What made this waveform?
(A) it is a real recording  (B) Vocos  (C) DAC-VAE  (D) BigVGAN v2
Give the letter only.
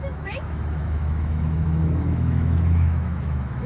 C